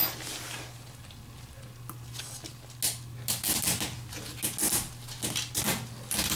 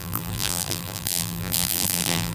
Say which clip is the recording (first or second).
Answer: first